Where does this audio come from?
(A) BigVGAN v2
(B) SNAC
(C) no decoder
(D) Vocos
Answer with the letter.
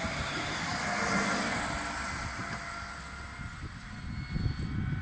C